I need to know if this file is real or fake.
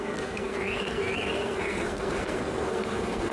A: fake